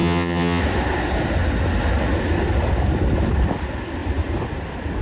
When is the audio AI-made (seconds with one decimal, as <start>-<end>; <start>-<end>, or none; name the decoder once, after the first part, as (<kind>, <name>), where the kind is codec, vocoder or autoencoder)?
0.0-0.6 (vocoder, HiFi-GAN)

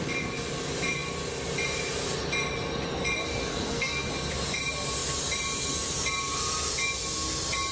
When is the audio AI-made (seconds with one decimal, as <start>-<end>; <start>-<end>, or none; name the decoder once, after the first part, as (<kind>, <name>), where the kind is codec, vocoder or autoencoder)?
3.5-4.1 (codec, SNAC)

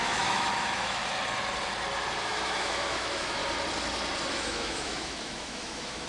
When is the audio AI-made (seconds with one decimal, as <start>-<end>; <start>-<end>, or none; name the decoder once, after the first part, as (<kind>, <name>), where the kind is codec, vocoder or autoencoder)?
0.0-1.0 (autoencoder, DAC-VAE); 2.2-3.4; 4.3-6.1

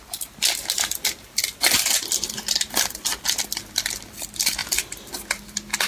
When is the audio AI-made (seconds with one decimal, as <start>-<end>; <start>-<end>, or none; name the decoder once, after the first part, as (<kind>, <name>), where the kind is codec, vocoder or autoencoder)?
none

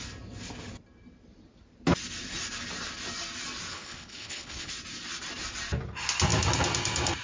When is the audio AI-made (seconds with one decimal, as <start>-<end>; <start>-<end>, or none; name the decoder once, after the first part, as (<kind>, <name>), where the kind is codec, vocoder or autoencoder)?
3.7-4.7 (codec, HILCodec)

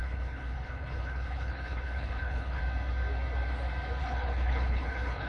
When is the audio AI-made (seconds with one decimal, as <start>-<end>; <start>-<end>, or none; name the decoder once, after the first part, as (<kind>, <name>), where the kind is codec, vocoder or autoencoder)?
0.0-2.6 (codec, HILCodec); 4.0-5.3

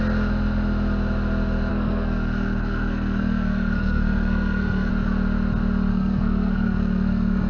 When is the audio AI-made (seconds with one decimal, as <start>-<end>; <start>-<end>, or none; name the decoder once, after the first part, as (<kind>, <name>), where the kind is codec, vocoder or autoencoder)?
1.7-4.9 (codec, SNAC); 5.9-7.5